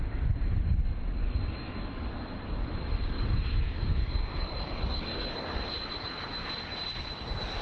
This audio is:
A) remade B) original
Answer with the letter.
B